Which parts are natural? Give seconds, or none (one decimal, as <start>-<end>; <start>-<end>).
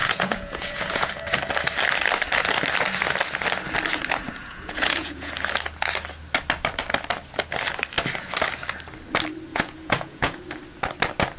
1.1-4.4; 5.3-9.5; 10.4-11.4